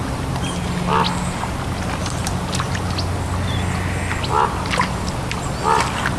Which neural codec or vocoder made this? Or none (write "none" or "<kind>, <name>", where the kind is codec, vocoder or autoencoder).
none